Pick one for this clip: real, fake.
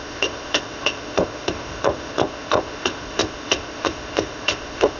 fake